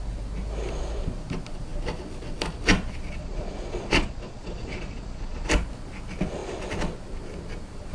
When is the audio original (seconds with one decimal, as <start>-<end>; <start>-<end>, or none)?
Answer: 0.0-3.2; 5.5-7.9